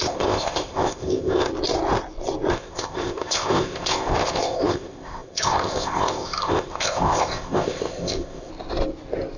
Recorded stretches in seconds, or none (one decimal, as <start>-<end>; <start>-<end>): 1.5-2.5; 8.5-9.4